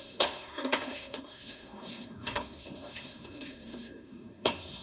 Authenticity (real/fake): fake